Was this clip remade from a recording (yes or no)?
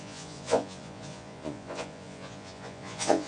yes